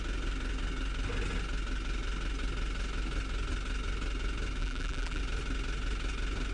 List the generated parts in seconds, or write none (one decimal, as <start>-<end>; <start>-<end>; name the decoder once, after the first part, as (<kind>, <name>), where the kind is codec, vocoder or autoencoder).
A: 4.6-5.2 (vocoder, BigVGAN v2)